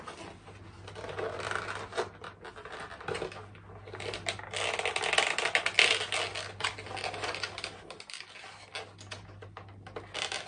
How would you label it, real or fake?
real